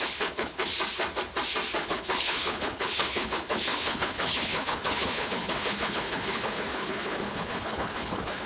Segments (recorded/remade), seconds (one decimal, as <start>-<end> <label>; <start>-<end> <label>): 0.0-0.7 remade; 0.7-1.8 recorded; 1.8-8.5 remade